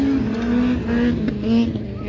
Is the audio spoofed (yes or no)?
no